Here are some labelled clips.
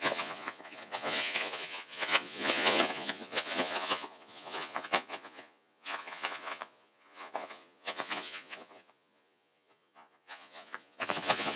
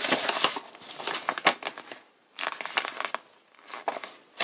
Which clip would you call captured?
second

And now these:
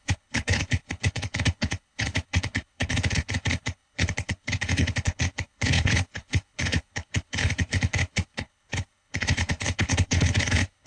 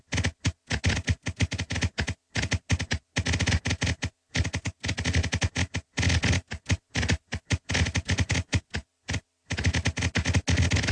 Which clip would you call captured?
second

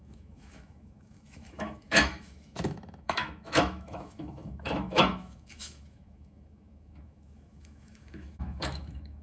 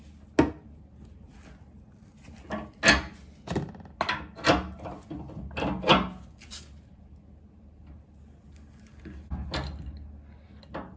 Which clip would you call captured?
second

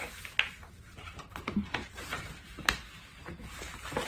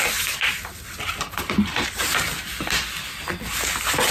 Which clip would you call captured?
second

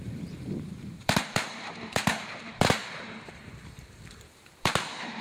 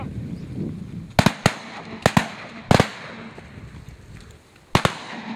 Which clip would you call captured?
second